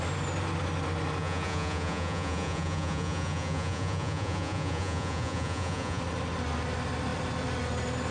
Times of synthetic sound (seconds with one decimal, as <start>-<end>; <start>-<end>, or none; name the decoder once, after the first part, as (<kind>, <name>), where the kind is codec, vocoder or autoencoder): 1.2-6.0 (vocoder, Vocos)